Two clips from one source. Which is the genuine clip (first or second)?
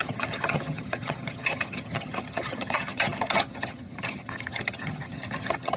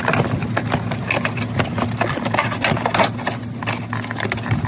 second